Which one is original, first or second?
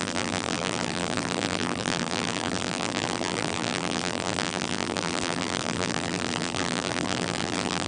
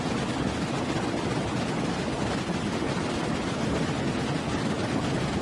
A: second